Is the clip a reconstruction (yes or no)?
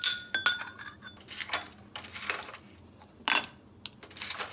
no